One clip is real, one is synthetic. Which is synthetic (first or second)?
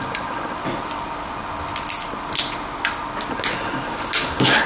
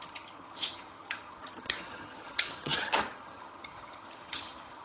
second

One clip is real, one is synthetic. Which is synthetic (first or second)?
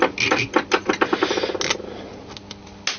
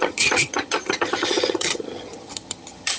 second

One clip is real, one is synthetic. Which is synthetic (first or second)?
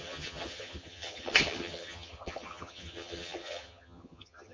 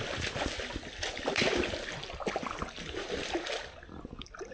first